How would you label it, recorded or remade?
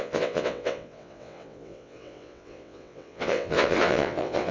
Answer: remade